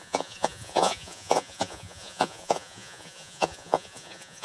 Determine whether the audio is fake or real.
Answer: fake